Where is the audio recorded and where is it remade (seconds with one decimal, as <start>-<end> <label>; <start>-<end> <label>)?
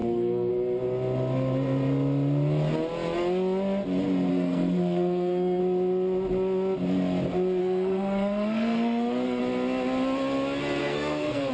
0.0-0.5 remade; 0.5-4.3 recorded; 4.3-5.6 remade; 5.6-7.6 recorded; 7.6-9.4 remade; 9.4-10.8 recorded; 10.8-11.5 remade